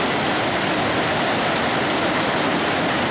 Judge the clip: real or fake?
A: real